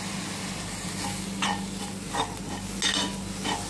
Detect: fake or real real